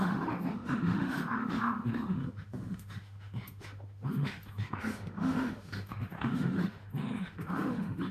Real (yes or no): no